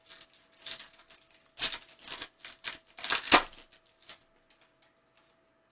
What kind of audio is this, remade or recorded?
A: recorded